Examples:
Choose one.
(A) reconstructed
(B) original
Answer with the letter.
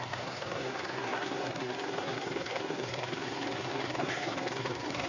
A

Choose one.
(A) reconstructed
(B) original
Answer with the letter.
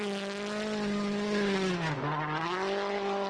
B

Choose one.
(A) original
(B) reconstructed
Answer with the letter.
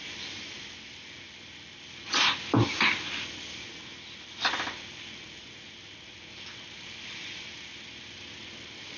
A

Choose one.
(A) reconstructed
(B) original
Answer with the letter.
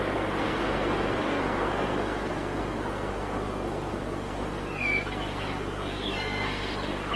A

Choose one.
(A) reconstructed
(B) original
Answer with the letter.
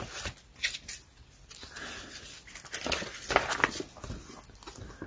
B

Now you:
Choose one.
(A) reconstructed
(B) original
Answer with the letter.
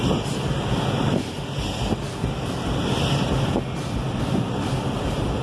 B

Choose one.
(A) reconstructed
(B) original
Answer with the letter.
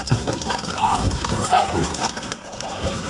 A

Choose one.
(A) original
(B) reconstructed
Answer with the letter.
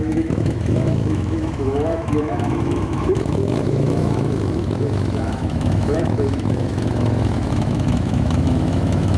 B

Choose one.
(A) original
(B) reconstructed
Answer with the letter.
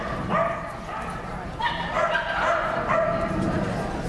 A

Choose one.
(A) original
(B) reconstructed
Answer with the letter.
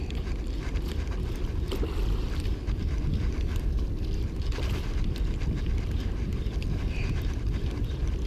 A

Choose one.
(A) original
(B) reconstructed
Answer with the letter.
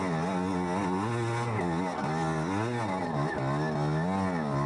A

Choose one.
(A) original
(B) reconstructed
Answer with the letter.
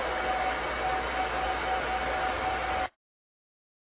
A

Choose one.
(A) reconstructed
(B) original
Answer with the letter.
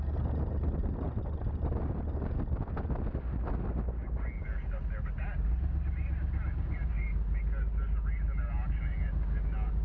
B